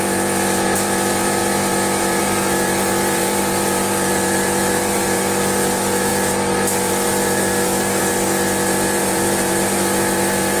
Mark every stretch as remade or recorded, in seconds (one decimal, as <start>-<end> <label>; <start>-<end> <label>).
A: 0.0-10.6 remade